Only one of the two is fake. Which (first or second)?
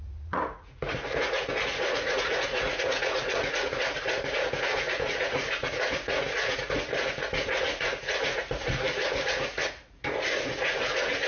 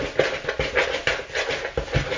first